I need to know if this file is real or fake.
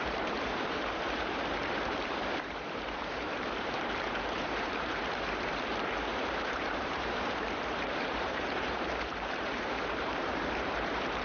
fake